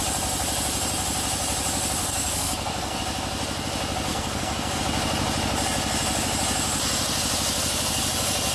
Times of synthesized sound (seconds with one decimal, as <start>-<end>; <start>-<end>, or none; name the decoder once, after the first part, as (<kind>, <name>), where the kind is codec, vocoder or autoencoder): 2.0-3.0 (codec, SNAC); 4.1-4.8